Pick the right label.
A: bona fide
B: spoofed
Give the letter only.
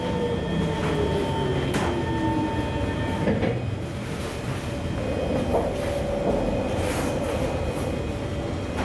A